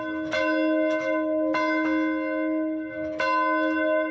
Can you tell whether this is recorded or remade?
recorded